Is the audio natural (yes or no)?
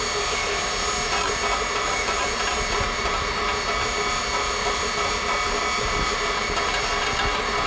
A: yes